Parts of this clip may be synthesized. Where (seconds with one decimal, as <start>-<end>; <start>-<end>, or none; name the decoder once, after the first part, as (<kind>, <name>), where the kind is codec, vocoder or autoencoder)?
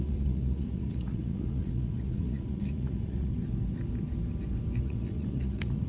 0.0-3.3 (vocoder, Vocos); 4.8-5.9